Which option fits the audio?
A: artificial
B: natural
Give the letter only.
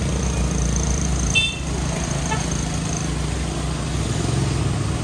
B